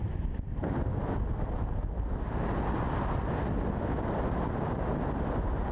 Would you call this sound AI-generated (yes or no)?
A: no